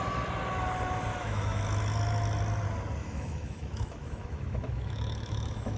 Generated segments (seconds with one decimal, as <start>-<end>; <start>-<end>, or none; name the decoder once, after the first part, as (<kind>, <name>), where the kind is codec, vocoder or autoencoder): 1.1-1.6 (autoencoder, DAC-VAE); 3.0-5.8